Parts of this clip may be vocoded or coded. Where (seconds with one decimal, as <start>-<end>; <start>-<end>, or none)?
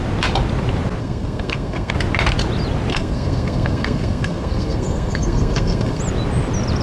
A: 1.0-1.9; 2.9-6.0